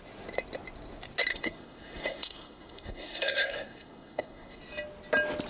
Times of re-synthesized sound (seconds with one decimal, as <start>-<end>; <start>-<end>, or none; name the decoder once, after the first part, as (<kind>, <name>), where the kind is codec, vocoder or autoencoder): 1.3-4.6 (codec, SNAC)